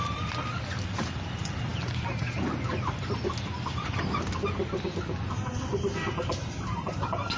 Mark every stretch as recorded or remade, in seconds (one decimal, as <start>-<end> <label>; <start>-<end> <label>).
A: 0.0-7.4 recorded